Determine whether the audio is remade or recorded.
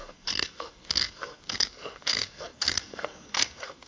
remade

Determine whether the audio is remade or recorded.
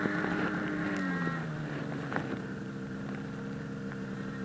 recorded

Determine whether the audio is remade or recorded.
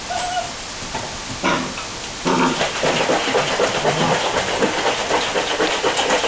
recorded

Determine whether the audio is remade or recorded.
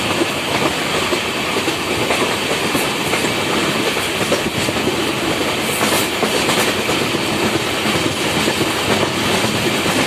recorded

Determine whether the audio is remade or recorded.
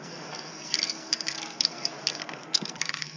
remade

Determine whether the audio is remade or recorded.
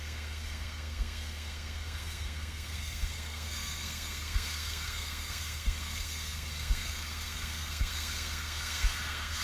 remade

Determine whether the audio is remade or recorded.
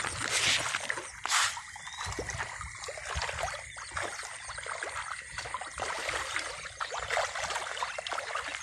recorded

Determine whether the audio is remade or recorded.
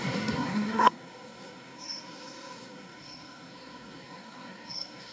remade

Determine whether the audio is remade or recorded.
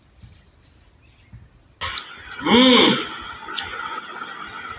recorded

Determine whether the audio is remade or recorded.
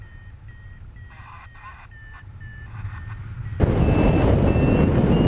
recorded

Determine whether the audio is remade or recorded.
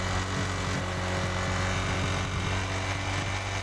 recorded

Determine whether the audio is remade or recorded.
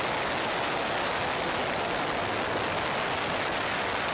recorded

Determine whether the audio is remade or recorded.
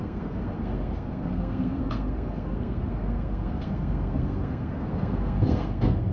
remade